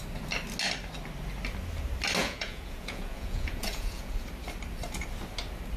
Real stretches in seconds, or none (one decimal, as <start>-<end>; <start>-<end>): 0.0-2.2; 4.1-5.8